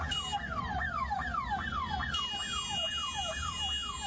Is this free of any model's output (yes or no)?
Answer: yes